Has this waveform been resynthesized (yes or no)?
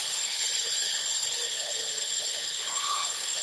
yes